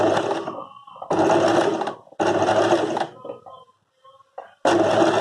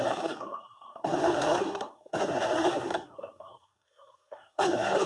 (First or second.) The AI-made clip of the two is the second